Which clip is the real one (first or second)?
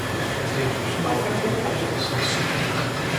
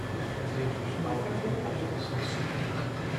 second